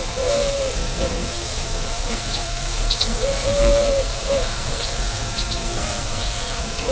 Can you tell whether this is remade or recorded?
remade